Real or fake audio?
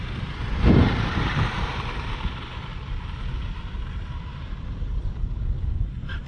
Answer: fake